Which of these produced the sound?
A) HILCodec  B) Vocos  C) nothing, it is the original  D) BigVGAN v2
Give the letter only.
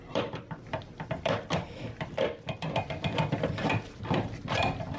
D